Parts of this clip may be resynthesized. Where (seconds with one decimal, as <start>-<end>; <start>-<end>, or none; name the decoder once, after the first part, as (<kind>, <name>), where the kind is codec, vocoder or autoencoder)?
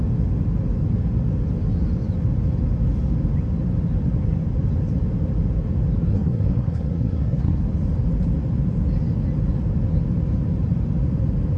6.1-7.6 (codec, SNAC)